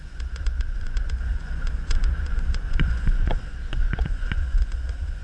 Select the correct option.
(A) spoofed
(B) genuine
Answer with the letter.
A